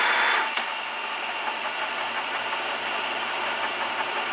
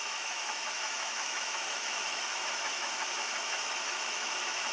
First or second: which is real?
first